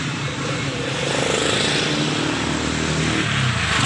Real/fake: real